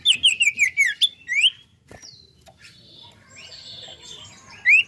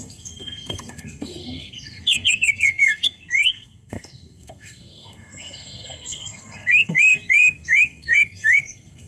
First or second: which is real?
first